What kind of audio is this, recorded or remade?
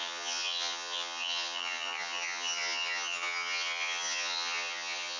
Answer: remade